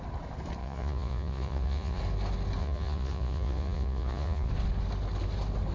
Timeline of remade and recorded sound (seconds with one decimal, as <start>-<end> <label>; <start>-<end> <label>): 0.0-0.6 recorded; 0.6-2.0 remade; 2.0-2.6 recorded; 2.6-4.5 remade; 4.5-5.7 recorded